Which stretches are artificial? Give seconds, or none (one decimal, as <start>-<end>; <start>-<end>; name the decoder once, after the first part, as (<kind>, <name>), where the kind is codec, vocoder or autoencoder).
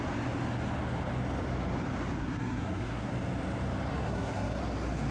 2.2-3.1 (codec, SNAC); 3.9-4.6